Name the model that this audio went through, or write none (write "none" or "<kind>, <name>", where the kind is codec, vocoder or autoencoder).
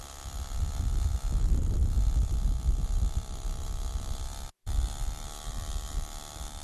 none